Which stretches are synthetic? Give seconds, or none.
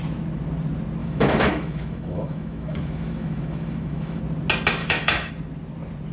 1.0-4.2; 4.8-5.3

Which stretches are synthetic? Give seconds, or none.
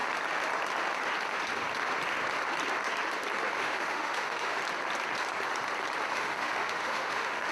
3.5-4.6; 6.1-7.5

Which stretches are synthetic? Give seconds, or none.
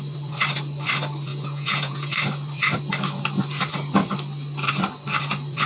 1.3-2.1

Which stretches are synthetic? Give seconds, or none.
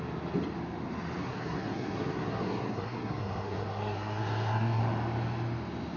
1.2-4.8